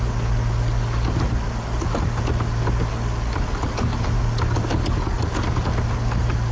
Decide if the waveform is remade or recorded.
recorded